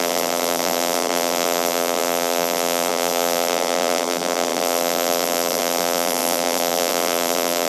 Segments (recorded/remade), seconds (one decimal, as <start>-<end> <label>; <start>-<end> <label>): 0.0-7.7 remade